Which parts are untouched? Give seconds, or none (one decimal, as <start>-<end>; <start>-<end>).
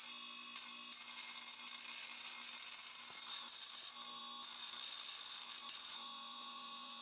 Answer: 0.0-5.6